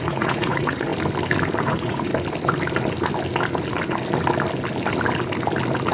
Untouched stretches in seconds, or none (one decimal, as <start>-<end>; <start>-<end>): 0.9-1.6; 2.1-5.9

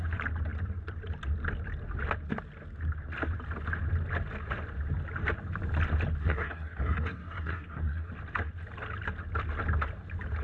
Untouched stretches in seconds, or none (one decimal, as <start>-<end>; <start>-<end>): 0.0-6.2; 8.1-10.4

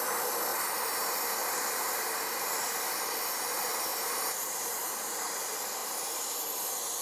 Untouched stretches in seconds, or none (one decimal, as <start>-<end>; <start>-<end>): 0.0-0.5; 2.9-3.9; 5.3-5.8; 6.4-7.0

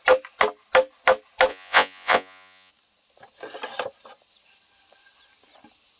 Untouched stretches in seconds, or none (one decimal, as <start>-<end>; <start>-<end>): 0.0-1.5; 2.7-6.0

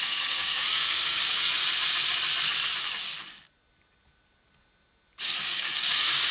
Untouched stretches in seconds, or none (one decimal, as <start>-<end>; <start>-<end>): 1.6-5.4

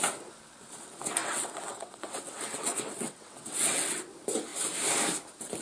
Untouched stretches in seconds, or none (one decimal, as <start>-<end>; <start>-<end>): 0.0-1.2; 4.0-5.6

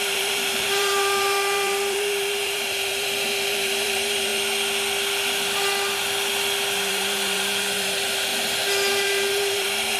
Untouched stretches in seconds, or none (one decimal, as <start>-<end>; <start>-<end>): 4.3-6.9; 8.3-8.9